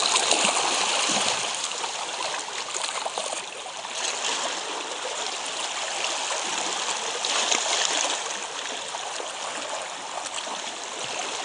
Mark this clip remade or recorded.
recorded